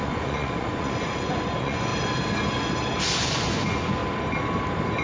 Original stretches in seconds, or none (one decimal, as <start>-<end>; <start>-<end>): 1.9-3.2; 4.0-5.0

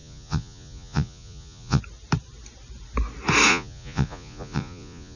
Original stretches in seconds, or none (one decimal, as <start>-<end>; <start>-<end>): 1.8-3.5